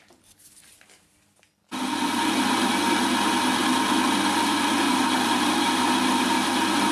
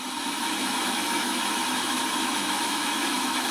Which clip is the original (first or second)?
first